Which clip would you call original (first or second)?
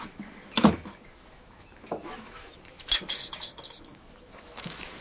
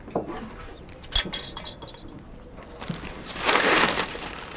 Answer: second